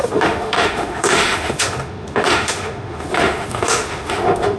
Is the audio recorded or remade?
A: remade